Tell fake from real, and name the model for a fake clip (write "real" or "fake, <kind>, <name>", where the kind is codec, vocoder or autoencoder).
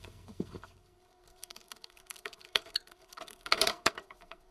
fake, codec, SNAC